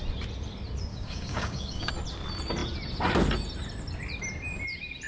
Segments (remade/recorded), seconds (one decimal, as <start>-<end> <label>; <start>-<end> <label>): 0.0-0.9 recorded; 0.9-1.9 remade; 1.9-5.1 recorded